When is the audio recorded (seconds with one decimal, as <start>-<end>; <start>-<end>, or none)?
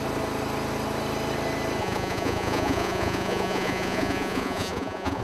0.0-1.8